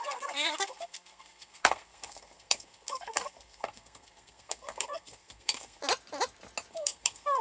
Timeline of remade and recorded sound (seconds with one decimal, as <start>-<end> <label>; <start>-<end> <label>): 0.0-5.8 remade; 5.8-6.7 recorded; 6.7-7.4 remade

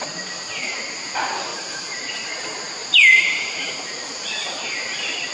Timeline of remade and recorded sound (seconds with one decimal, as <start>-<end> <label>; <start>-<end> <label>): 0.0-1.5 recorded; 1.5-2.3 remade; 2.3-2.8 recorded; 2.8-3.7 remade; 3.7-5.3 recorded

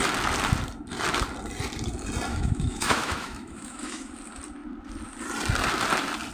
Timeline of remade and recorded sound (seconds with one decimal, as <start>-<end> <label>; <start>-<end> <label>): 0.0-2.3 recorded; 2.3-4.1 remade; 4.1-6.3 recorded

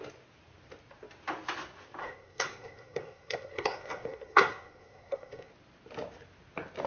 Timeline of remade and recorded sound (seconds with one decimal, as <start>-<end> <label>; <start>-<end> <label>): 0.0-2.0 recorded; 2.0-5.5 remade; 5.5-6.9 recorded

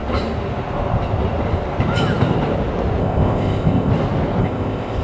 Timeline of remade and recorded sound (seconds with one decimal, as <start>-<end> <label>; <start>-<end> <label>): 0.0-3.0 recorded; 3.0-3.9 remade; 3.9-4.4 recorded; 4.4-5.0 remade

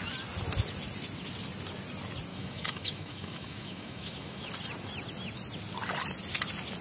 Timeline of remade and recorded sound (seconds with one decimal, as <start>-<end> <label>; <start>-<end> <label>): 0.0-2.3 recorded; 2.3-4.5 remade; 4.5-6.8 recorded

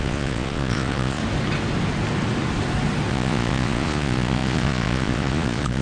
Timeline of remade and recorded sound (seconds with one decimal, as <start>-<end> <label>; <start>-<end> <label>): 0.0-1.2 remade; 1.2-3.1 recorded; 3.1-5.8 remade